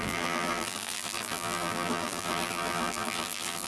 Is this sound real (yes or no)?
no